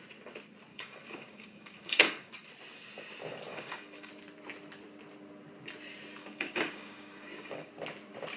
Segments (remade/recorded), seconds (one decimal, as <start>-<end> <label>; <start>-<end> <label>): 0.0-0.7 recorded; 0.7-2.3 remade; 2.3-3.5 recorded; 3.5-4.1 remade; 4.1-6.2 recorded; 6.2-7.7 remade; 7.7-8.4 recorded